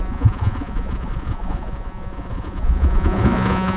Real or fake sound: fake